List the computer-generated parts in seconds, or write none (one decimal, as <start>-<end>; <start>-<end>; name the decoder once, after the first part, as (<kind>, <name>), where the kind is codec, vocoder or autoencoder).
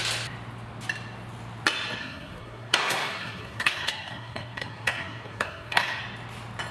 2.0-6.0 (codec, SNAC)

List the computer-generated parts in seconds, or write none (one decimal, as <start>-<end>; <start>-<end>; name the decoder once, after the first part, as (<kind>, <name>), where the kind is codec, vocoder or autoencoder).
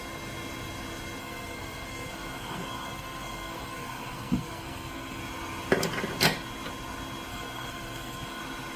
1.2-5.2 (codec, SNAC); 7.3-8.4